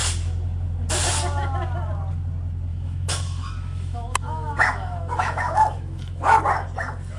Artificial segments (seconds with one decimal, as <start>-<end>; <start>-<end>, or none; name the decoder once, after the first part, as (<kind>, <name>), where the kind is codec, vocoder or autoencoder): 2.7-6.4 (autoencoder, DAC-VAE)